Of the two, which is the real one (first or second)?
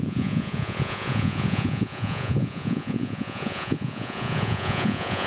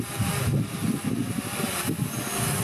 second